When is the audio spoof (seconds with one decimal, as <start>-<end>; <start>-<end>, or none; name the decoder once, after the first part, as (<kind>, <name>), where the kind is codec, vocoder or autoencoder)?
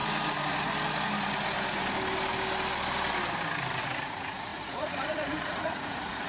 3.8-6.3 (vocoder, Vocos)